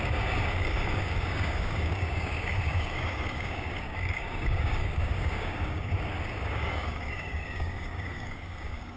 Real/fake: fake